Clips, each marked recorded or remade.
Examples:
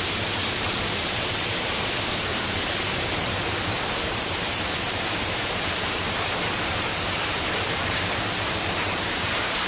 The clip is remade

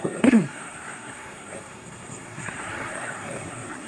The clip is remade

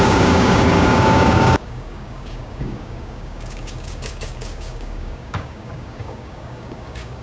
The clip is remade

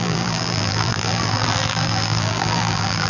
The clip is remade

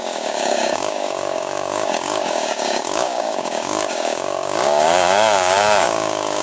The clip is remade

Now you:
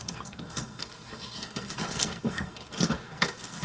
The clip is remade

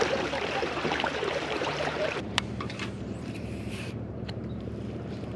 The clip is remade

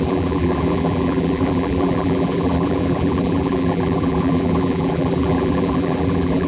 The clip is remade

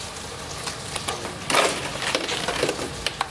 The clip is recorded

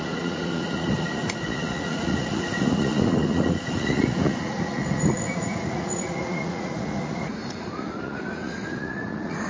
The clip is remade